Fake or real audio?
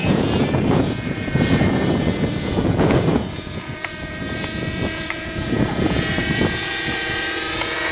fake